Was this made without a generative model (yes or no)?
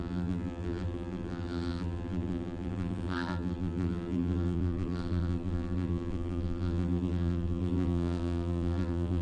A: no